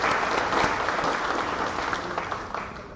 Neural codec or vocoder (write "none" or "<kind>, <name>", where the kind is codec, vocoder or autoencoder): none